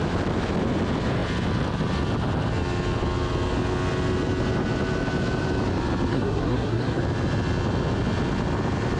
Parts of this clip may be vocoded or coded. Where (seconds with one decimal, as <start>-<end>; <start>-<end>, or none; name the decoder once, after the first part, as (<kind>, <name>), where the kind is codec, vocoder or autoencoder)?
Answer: 6.1-7.0 (codec, SNAC)